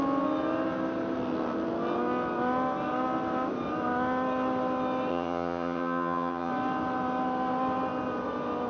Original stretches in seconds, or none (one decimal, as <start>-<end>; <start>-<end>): 0.0-5.1; 6.5-8.7

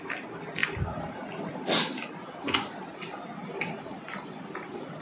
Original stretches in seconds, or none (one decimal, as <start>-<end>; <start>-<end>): 0.0-5.0

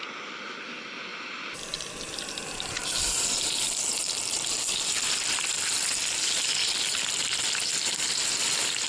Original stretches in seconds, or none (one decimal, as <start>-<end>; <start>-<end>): 0.0-1.1; 1.6-8.9

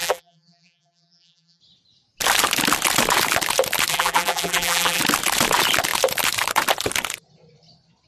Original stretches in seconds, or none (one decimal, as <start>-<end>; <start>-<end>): 1.6-3.9; 5.0-8.1

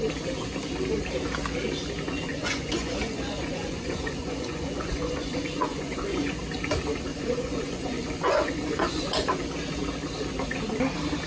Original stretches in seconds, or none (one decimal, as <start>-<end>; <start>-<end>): 0.0-2.3; 6.4-7.1; 9.4-11.3

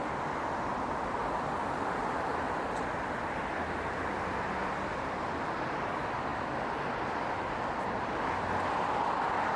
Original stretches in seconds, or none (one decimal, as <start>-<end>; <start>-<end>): 0.0-9.6